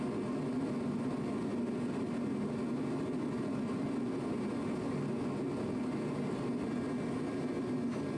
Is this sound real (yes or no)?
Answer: yes